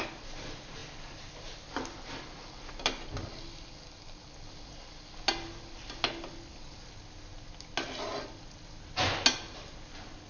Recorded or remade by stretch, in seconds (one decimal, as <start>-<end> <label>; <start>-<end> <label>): 0.0-10.3 recorded